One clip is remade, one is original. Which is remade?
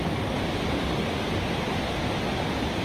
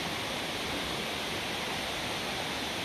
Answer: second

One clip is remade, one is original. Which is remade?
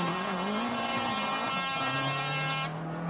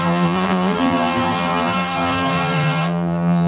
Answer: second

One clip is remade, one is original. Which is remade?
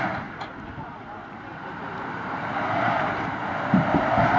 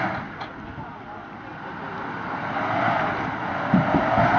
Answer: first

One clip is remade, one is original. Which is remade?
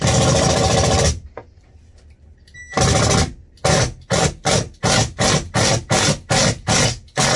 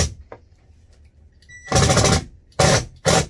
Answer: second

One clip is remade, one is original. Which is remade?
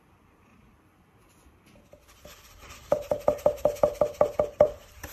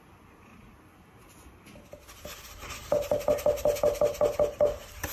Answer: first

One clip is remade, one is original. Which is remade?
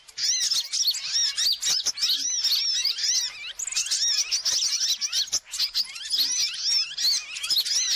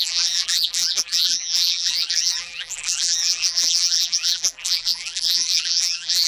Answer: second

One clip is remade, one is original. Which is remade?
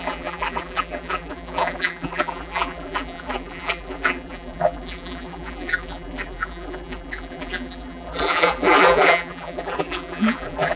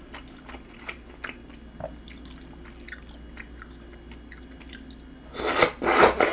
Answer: first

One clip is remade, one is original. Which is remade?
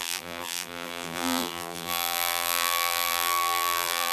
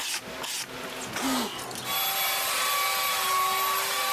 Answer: first